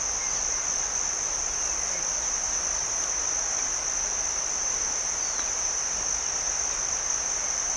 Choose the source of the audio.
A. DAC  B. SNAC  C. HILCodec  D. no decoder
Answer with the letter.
D